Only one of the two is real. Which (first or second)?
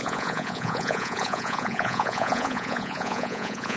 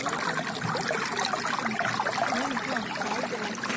second